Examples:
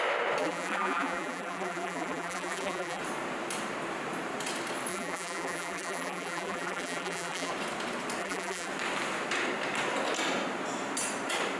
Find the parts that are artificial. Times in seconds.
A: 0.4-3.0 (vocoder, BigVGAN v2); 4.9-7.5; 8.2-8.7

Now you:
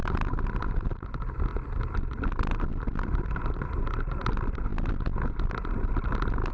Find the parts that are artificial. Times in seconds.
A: none

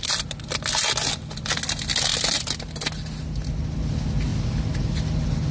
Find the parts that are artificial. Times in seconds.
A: none

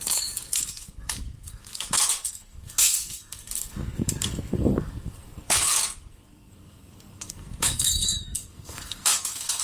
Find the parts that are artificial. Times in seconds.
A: 0.0-9.6 (codec, SNAC)

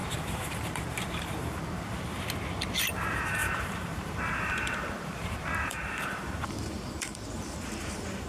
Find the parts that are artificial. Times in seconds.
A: 0.0-2.2 (vocoder, BigVGAN v2); 3.4-8.3

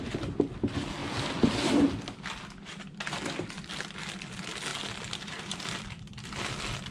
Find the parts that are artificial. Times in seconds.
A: 4.7-6.5 (vocoder, BigVGAN v2)

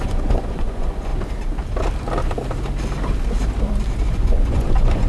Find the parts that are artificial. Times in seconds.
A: 0.0-1.1 (vocoder, Vocos); 4.1-5.1

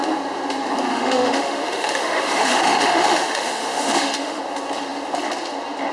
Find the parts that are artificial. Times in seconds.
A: 0.9-4.4 (autoencoder, DAC-VAE)